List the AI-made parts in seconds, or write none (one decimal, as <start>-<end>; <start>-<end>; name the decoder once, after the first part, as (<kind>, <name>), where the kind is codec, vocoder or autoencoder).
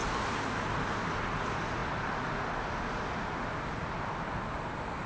0.0-1.4 (vocoder, BigVGAN v2)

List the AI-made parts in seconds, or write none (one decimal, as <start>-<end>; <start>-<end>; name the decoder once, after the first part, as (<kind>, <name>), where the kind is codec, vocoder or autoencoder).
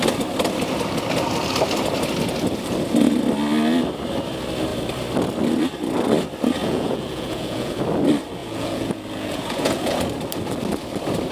6.6-7.8 (vocoder, Vocos); 8.4-10.0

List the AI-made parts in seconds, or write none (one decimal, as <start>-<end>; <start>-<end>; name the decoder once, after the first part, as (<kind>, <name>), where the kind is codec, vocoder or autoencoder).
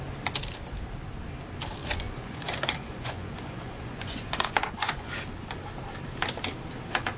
1.8-5.1 (vocoder, Vocos)